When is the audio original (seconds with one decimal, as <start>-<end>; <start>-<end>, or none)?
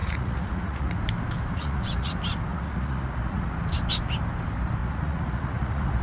1.0-1.5; 2.1-2.5; 3.5-4.8